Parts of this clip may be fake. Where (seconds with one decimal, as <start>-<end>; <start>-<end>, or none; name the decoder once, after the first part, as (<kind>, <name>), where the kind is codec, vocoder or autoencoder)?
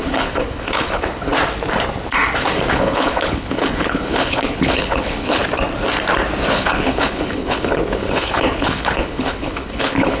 0.0-1.3 (codec, HILCodec); 2.7-5.4; 6.5-10.2